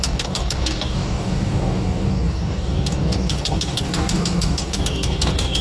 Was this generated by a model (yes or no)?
yes